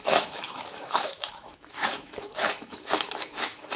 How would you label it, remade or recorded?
remade